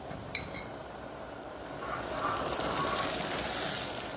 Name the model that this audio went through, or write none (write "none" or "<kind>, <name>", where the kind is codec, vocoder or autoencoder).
vocoder, BigVGAN v2